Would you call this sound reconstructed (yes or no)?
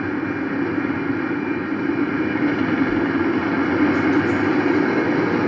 no